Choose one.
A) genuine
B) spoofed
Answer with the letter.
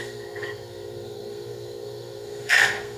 B